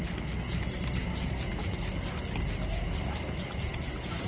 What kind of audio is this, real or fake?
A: real